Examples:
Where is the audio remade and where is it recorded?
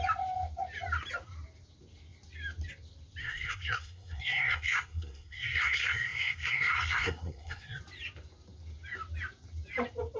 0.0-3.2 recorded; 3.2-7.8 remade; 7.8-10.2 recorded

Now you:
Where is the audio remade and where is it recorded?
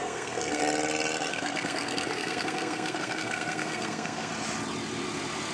0.0-0.6 remade; 0.6-1.3 recorded; 1.3-4.3 remade; 4.3-5.5 recorded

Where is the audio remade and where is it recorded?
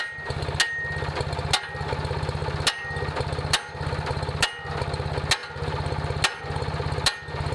0.0-7.5 recorded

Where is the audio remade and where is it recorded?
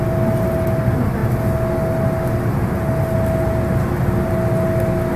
0.0-5.2 recorded